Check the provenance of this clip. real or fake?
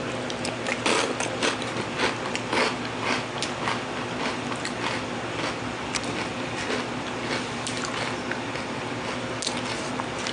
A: real